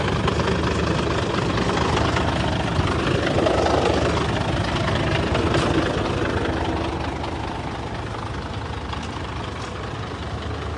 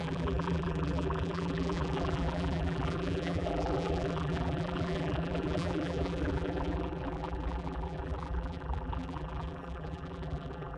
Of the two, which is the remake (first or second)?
second